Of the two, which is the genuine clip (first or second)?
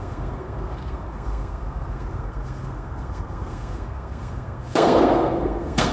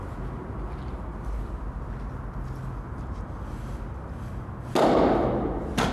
second